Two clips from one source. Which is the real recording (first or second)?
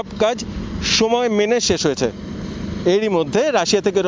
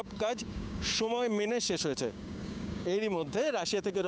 first